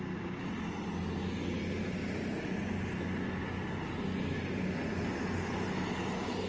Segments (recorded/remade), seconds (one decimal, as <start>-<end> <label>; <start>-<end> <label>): 0.0-6.5 recorded